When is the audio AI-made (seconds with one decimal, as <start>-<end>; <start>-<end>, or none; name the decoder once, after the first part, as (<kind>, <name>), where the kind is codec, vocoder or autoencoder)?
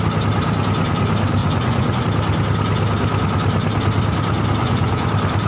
1.4-2.0 (vocoder, Vocos); 4.6-5.1